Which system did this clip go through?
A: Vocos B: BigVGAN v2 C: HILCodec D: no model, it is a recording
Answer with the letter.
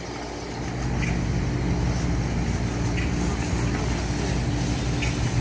D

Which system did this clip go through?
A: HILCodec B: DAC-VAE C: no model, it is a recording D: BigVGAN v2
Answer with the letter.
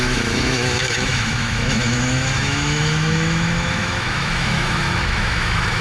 B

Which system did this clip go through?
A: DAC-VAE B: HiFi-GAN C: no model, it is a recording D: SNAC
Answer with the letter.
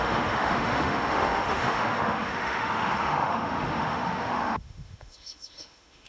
A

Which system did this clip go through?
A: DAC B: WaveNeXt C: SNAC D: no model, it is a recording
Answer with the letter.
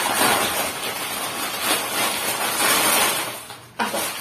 D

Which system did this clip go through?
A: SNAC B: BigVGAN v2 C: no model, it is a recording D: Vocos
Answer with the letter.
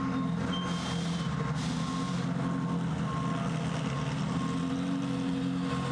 C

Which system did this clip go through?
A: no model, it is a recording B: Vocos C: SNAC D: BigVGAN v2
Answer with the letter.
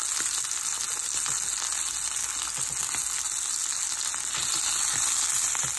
A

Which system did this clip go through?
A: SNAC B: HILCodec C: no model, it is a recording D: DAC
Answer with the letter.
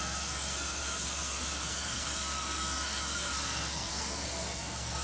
A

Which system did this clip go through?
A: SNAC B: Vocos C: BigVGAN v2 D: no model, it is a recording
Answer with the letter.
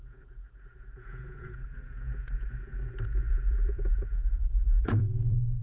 B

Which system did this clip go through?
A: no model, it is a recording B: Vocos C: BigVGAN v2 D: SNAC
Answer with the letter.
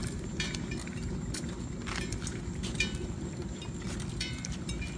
C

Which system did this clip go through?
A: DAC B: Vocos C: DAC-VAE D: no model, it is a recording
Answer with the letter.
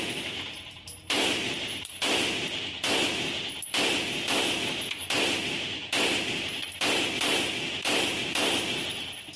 D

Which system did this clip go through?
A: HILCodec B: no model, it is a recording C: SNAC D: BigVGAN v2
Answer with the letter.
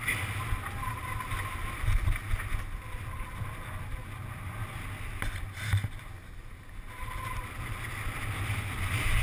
B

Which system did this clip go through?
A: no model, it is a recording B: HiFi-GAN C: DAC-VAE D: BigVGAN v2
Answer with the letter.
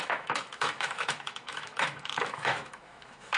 C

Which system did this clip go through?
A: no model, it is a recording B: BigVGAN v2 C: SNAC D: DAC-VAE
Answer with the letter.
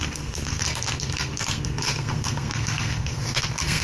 C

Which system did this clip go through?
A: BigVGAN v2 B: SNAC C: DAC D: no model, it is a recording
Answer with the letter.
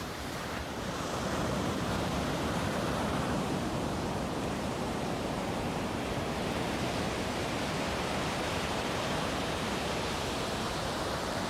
A